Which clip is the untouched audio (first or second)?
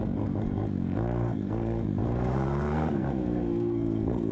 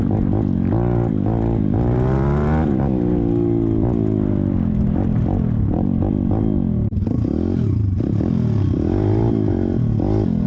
second